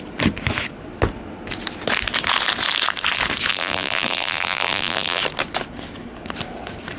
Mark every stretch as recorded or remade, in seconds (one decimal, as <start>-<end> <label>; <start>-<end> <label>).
0.0-3.5 recorded; 3.5-5.2 remade; 5.2-7.0 recorded